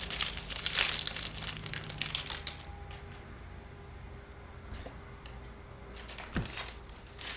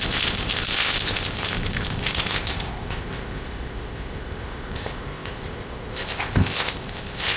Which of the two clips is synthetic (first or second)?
second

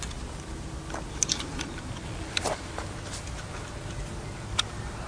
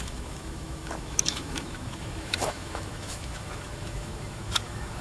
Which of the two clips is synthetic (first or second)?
second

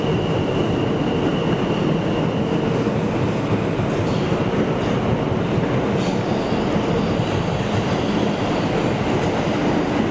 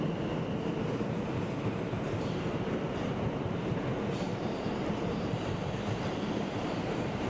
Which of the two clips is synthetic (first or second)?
second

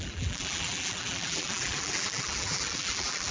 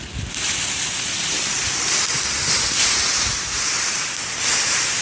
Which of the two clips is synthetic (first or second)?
first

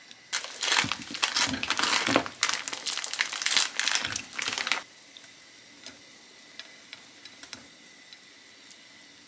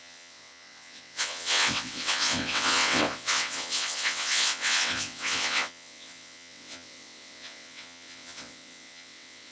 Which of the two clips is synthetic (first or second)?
second